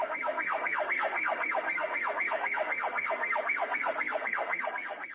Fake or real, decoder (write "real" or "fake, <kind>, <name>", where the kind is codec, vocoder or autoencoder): fake, codec, SNAC